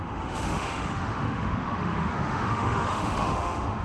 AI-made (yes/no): yes